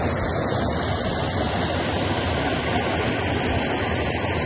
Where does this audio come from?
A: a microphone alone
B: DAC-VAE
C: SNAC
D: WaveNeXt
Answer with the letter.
A